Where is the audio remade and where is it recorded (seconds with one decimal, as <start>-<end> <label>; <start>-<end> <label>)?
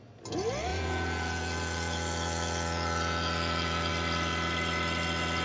0.0-0.7 recorded; 0.7-3.9 remade; 3.9-5.4 recorded